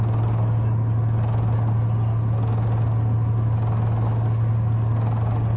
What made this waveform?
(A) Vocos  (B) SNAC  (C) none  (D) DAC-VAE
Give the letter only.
C